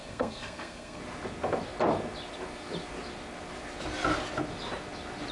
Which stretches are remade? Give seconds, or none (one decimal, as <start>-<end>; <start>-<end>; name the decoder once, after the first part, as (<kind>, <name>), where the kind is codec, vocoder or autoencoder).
0.0-1.0 (codec, SNAC)